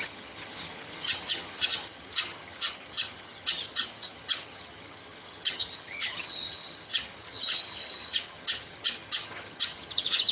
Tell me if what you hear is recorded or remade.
remade